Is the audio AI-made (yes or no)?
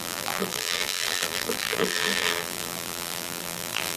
yes